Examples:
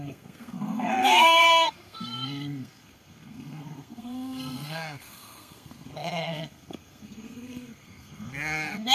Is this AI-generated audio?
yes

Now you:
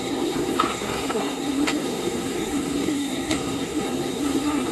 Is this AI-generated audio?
yes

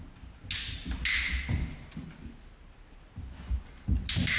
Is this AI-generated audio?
no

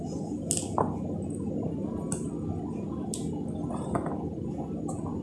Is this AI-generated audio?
no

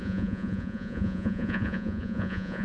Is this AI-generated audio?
yes